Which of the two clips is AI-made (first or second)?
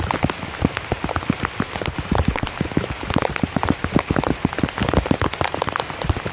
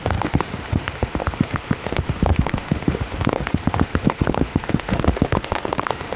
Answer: second